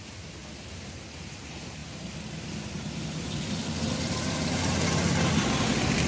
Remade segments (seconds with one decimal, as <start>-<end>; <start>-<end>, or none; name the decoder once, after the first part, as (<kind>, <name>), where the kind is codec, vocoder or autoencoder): 0.0-0.4 (vocoder, BigVGAN v2); 0.9-6.1

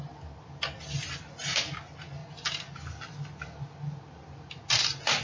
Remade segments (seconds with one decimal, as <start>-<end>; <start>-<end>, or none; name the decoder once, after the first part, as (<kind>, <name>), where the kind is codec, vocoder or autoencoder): none

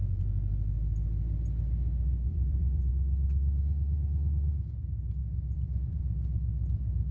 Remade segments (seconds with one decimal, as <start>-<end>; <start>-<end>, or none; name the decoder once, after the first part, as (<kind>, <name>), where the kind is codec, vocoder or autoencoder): 2.3-2.9 (vocoder, BigVGAN v2); 5.2-6.0

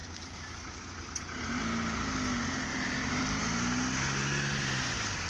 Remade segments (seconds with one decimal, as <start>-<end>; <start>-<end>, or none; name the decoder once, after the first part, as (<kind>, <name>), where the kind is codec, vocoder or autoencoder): 0.0-1.4 (vocoder, BigVGAN v2); 2.7-3.4

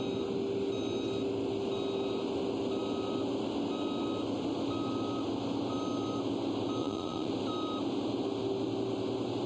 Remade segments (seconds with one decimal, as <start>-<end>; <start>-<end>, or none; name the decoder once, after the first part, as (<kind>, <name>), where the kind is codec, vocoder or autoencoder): 6.8-7.3 (vocoder, Vocos)

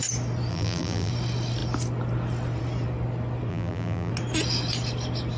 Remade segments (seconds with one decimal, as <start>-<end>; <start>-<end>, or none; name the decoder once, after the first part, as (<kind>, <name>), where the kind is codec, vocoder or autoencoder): 0.5-1.1 (vocoder, BigVGAN v2); 3.5-4.1

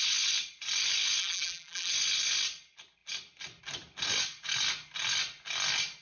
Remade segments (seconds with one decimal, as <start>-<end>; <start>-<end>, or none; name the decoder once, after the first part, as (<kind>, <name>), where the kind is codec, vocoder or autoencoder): 1.2-1.9 (vocoder, BigVGAN v2)

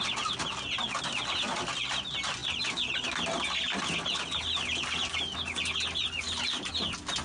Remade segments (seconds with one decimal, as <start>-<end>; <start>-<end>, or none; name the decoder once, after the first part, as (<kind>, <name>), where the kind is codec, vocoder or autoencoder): none